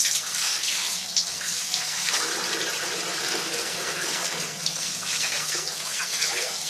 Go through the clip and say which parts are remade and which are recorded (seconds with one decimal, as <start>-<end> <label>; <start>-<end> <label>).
0.0-2.3 remade; 2.3-3.2 recorded; 3.2-6.7 remade